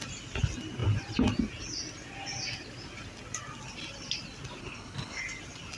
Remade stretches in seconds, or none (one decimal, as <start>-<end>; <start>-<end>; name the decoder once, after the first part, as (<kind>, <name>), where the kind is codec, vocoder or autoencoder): 4.6-5.2 (codec, HILCodec)